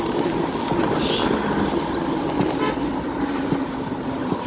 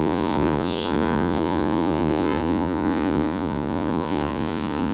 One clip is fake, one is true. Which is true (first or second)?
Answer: first